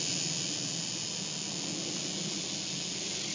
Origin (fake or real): real